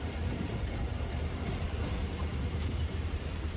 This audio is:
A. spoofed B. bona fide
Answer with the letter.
A